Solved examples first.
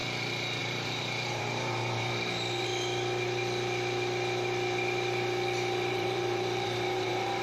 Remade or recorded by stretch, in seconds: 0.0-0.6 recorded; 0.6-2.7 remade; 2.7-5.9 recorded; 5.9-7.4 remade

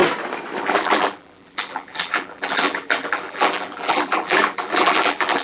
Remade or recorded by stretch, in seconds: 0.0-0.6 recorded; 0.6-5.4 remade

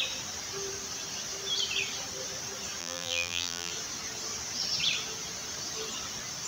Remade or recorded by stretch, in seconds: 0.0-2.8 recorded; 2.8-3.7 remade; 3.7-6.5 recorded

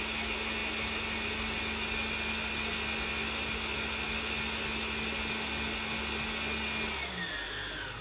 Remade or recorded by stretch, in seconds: 0.0-8.0 recorded

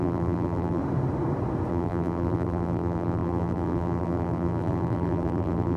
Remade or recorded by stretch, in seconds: 0.0-0.8 remade; 0.8-1.7 recorded; 1.7-5.8 remade

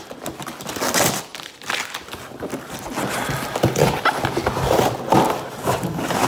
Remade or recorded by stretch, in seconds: 0.0-6.3 recorded